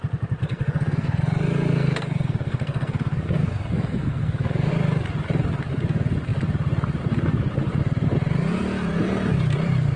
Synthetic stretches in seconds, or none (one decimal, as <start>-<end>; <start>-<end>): 0.4-4.7